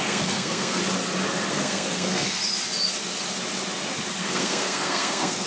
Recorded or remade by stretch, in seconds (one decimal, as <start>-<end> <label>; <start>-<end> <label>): 0.0-0.8 remade; 0.8-1.5 recorded; 1.5-2.4 remade; 2.4-4.2 recorded; 4.2-5.5 remade